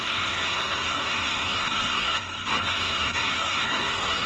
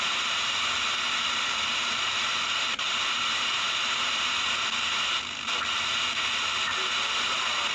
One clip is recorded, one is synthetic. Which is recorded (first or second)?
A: second